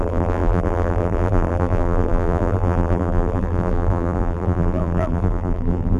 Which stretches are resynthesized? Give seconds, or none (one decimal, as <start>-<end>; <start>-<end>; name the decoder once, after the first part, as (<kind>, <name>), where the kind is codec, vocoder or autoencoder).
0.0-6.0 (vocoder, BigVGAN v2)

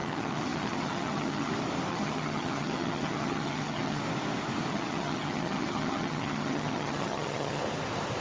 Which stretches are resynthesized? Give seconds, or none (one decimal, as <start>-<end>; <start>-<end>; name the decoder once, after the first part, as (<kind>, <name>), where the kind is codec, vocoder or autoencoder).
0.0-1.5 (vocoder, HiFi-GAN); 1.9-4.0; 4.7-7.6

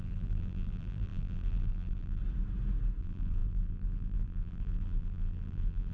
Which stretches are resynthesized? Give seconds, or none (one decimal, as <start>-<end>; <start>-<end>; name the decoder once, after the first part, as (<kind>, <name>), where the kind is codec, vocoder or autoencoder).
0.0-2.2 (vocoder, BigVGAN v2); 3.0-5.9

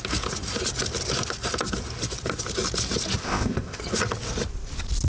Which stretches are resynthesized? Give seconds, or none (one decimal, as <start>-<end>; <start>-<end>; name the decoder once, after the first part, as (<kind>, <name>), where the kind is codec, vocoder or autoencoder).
3.2-3.8 (codec, ZipCodec)